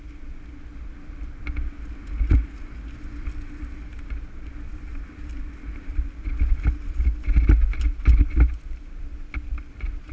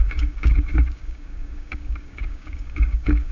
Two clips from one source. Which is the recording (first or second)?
first